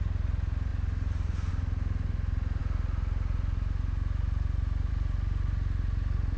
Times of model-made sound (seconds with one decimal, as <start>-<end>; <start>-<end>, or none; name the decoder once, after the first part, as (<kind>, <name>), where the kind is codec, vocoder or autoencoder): none